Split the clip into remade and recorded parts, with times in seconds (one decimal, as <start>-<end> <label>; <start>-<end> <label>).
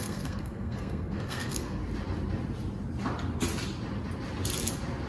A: 0.0-1.8 remade; 1.8-5.1 recorded